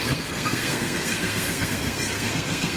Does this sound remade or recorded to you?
remade